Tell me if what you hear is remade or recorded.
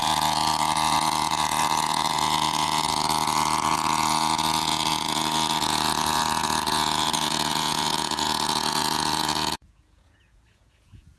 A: remade